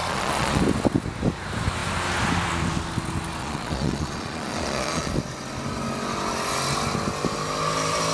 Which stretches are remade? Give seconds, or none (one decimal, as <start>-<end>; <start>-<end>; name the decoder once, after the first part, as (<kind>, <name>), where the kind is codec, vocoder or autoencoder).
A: 0.0-0.6 (vocoder, Vocos); 3.4-5.1